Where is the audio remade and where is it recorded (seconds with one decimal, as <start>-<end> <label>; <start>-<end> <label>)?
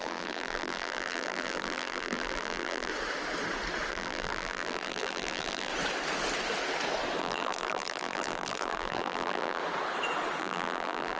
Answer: 0.0-2.9 remade; 2.9-3.9 recorded; 3.9-5.7 remade; 5.7-7.2 recorded; 7.2-9.6 remade; 9.6-10.4 recorded; 10.4-11.2 remade